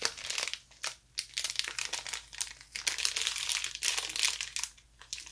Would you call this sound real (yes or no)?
yes